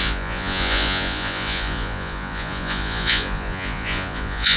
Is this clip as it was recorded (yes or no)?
no